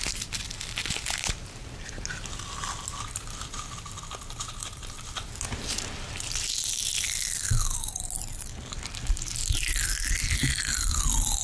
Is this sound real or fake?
real